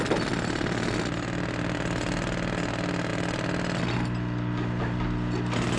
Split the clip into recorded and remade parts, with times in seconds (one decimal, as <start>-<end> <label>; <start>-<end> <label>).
0.0-5.8 recorded

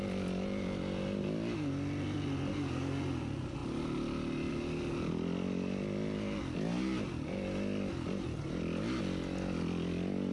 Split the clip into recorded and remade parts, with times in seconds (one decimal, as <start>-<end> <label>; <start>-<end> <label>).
0.0-10.3 recorded

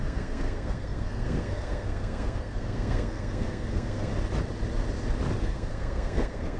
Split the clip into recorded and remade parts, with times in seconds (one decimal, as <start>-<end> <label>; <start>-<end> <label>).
0.0-4.1 remade; 4.1-5.4 recorded; 5.4-6.6 remade

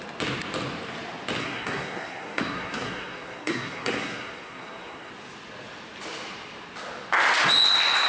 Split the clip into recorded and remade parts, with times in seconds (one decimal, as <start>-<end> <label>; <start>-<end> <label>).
0.0-1.4 recorded; 1.4-5.1 remade; 5.1-8.1 recorded

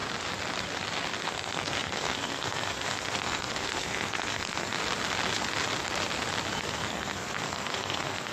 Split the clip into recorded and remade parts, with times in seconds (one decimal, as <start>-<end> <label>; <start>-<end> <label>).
0.0-1.2 recorded; 1.2-4.7 remade; 4.7-6.6 recorded; 6.6-8.3 remade

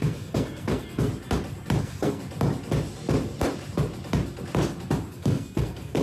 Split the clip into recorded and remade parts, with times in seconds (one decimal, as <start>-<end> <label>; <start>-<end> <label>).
0.0-1.1 remade; 1.1-1.8 recorded; 1.8-2.2 remade; 2.2-5.1 recorded; 5.1-6.0 remade

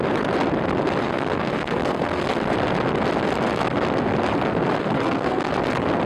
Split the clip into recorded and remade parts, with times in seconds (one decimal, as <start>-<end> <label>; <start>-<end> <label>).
0.0-1.0 recorded; 1.0-2.3 remade; 2.3-4.8 recorded; 4.8-5.5 remade; 5.5-6.1 recorded